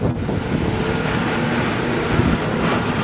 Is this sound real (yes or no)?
yes